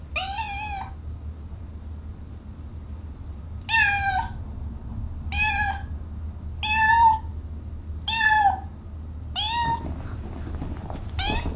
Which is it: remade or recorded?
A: recorded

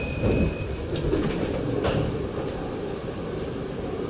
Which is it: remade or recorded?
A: remade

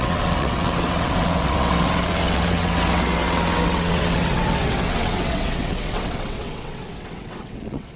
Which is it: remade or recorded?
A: remade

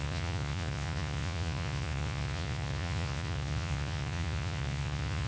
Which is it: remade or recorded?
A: remade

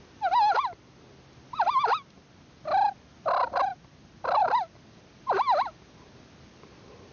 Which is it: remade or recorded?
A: recorded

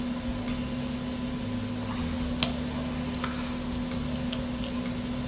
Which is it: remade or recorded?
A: recorded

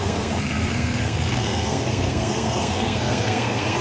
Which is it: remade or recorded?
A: remade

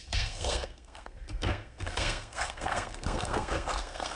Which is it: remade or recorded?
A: remade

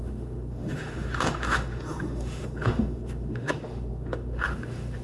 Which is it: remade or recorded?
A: remade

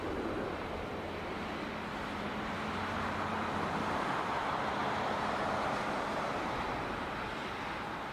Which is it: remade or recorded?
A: recorded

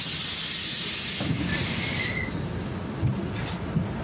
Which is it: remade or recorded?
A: recorded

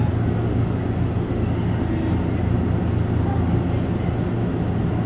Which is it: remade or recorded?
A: recorded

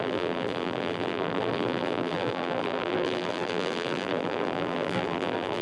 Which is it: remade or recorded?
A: remade